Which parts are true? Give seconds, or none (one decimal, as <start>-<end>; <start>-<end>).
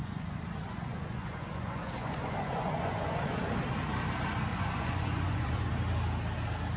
3.5-4.5; 5.7-6.8